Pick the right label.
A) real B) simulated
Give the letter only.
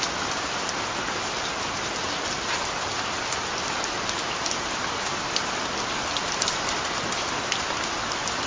A